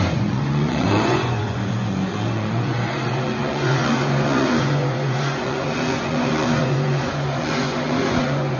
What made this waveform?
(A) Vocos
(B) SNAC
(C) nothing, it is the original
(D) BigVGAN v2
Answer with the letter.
A